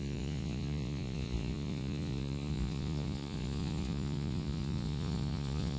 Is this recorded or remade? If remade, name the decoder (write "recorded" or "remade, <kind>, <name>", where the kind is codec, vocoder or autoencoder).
remade, vocoder, Vocos